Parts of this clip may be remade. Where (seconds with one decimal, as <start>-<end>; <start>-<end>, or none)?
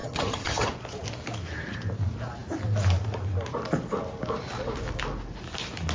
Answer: 0.0-0.7